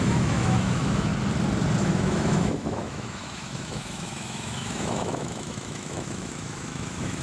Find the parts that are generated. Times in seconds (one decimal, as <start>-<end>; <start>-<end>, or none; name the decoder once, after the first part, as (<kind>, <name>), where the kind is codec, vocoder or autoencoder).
0.0-1.1 (autoencoder, DAC-VAE); 1.8-7.2